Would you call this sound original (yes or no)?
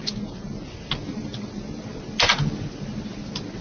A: yes